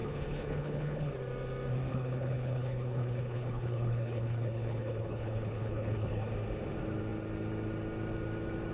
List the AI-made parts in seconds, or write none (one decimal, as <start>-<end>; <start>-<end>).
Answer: 0.0-1.1; 1.9-6.3